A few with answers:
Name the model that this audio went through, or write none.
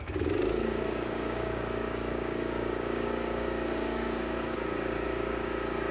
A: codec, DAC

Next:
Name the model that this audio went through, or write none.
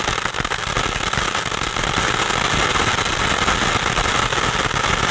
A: none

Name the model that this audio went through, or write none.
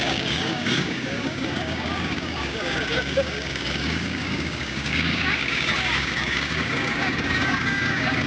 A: codec, DAC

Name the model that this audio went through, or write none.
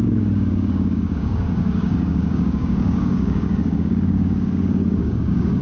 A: codec, DAC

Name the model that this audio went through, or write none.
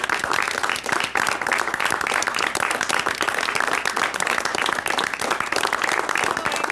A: none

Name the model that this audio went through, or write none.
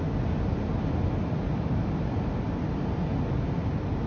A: none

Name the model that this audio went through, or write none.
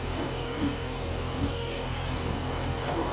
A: codec, DAC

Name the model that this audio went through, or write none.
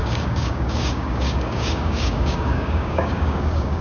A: codec, DAC